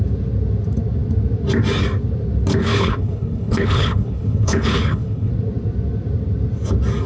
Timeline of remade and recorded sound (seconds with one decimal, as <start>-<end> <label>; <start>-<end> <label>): 0.0-2.6 recorded; 2.6-5.3 remade; 5.3-7.1 recorded